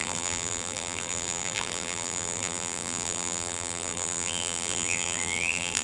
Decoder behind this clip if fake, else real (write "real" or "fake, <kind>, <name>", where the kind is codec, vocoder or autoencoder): fake, vocoder, BigVGAN v2